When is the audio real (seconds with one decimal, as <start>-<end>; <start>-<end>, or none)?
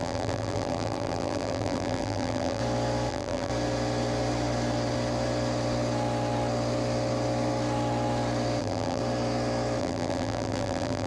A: 2.6-3.1; 3.5-8.6; 9.0-9.8